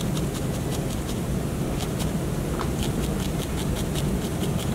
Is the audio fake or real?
real